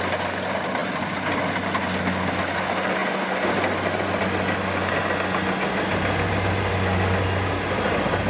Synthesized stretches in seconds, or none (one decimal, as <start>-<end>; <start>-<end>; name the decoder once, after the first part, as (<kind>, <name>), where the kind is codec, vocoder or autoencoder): none